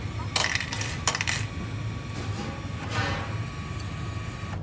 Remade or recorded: recorded